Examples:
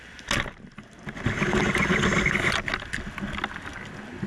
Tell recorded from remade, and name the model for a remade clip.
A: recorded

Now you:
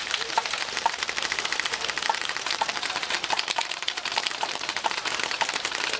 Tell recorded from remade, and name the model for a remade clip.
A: remade, vocoder, BigVGAN v2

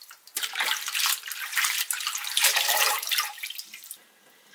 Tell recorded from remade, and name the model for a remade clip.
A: remade, vocoder, BigVGAN v2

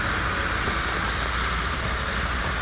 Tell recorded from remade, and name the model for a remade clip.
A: recorded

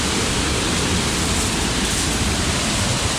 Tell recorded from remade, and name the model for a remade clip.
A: recorded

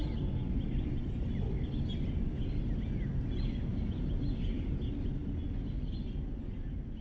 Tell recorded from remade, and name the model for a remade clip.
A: recorded